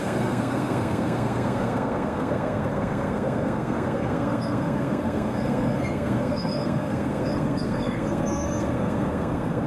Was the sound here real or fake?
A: fake